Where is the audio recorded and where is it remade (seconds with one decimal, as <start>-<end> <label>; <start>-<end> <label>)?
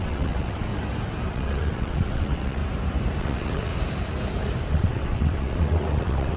0.0-0.7 remade; 0.7-1.3 recorded; 1.3-2.6 remade; 2.6-3.2 recorded; 3.2-3.7 remade; 3.7-4.7 recorded; 4.7-6.4 remade